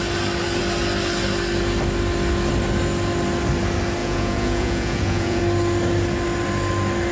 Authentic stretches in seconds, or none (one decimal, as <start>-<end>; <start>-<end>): 0.0-4.0; 5.4-7.1